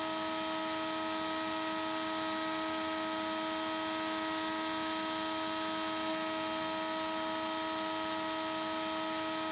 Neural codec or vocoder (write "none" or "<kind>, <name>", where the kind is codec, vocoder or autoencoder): none